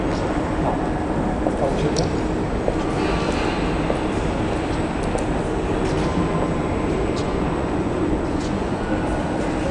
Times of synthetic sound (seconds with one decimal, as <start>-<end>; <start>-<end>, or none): 7.2-8.9